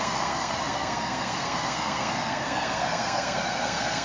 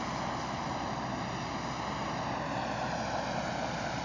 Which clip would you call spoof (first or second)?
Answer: first